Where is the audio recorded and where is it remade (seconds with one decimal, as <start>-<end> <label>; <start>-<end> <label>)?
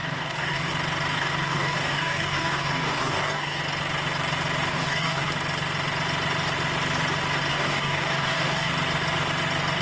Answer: 0.0-0.7 remade; 0.7-1.1 recorded; 1.1-3.6 remade; 3.6-4.7 recorded; 4.7-5.3 remade; 5.3-7.5 recorded; 7.5-8.7 remade; 8.7-9.8 recorded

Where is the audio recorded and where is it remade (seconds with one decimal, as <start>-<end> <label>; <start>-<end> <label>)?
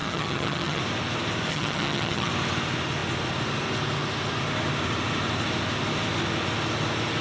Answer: 0.0-0.8 remade; 0.8-1.5 recorded; 1.5-2.3 remade; 2.3-7.2 recorded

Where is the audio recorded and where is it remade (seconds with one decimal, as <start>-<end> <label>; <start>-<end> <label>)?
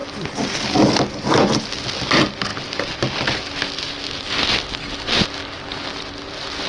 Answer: 0.0-6.7 recorded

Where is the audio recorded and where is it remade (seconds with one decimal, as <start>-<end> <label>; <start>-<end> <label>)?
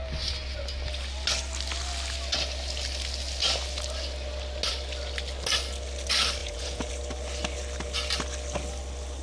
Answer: 0.0-6.4 recorded; 6.4-6.9 remade; 6.9-9.2 recorded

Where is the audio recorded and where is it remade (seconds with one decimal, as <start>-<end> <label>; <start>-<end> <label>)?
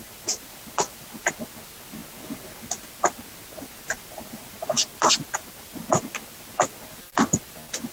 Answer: 0.0-7.9 recorded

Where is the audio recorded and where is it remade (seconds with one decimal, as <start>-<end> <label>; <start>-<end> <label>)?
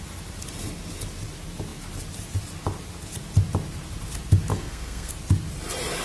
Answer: 0.0-4.5 recorded; 4.5-5.1 remade; 5.1-6.0 recorded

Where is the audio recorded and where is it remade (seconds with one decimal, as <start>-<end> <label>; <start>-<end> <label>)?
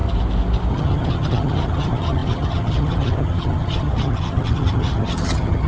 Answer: 0.0-0.7 recorded; 0.7-5.7 remade